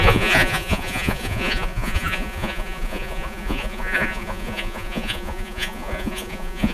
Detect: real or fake fake